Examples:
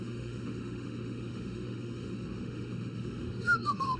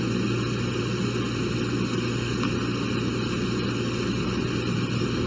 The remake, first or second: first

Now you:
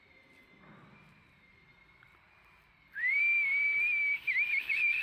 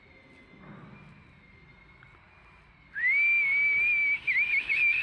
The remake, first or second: first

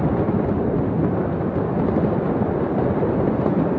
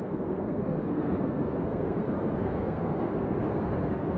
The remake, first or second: second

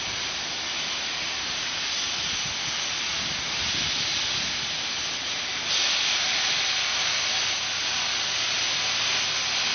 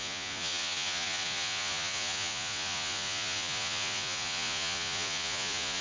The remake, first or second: second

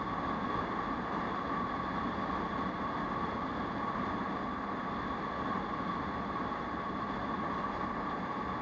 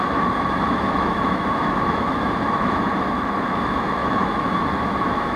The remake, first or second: second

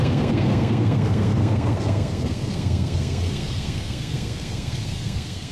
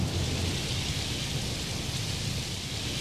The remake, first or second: first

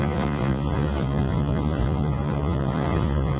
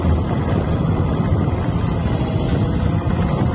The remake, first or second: first